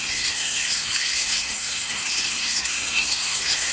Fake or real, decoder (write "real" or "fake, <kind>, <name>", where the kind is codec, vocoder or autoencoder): fake, codec, SNAC